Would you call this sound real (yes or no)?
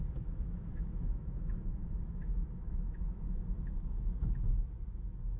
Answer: no